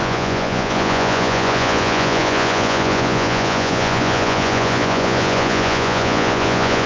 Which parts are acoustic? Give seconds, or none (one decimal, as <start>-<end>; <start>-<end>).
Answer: none